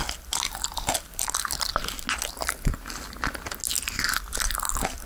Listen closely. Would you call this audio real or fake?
real